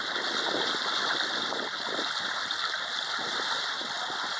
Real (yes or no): yes